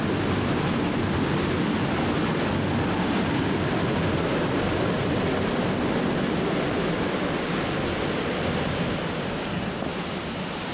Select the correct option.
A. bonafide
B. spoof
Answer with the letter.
A